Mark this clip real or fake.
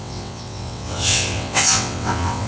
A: fake